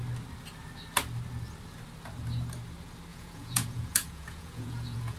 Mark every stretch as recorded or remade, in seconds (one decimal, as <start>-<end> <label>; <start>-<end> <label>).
0.0-3.1 recorded; 3.1-5.2 remade